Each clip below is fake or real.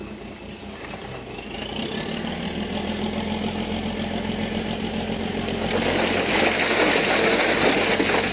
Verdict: real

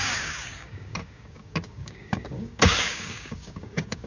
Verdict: fake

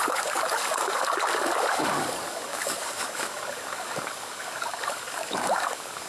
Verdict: fake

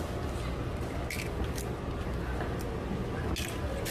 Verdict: real